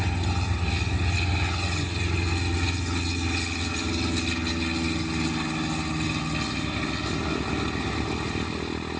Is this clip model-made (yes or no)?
no